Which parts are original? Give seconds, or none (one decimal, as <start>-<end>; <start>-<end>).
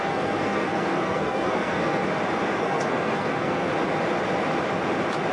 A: 2.0-2.6; 3.7-5.3